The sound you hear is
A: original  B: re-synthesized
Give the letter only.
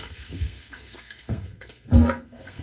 B